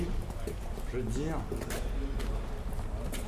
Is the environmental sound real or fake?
real